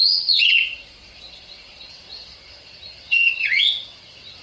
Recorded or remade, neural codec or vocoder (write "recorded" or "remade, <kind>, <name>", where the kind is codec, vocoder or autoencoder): remade, vocoder, WaveNeXt